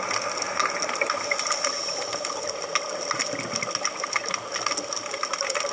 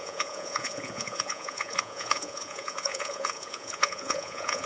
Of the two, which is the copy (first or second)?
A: second